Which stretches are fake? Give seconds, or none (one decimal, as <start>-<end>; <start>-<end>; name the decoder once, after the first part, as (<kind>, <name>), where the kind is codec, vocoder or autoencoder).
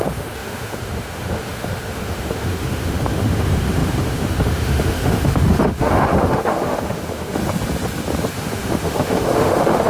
0.0-7.4 (autoencoder, DAC-VAE); 8.3-9.9